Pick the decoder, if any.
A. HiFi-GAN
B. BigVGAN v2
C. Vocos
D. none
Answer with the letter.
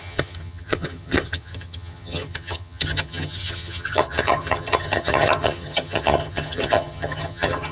A